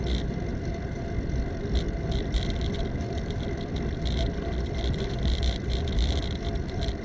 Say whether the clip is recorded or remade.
remade